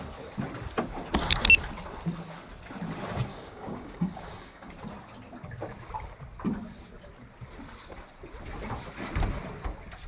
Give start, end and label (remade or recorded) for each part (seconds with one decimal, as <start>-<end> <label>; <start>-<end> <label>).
0.0-3.3 recorded; 3.3-4.7 remade; 4.7-10.1 recorded